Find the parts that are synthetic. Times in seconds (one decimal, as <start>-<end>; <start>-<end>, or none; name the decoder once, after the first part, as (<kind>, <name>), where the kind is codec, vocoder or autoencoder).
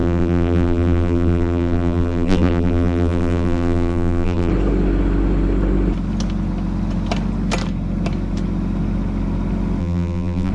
0.0-4.5 (vocoder, BigVGAN v2); 9.8-10.5